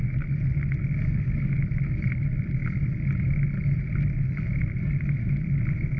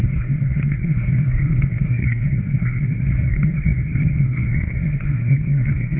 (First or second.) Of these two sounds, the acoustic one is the first